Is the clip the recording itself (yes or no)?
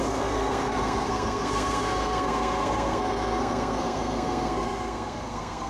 no